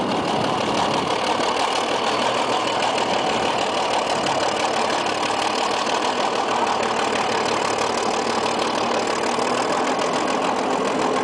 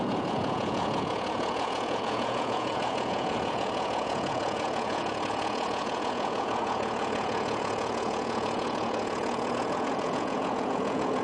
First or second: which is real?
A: first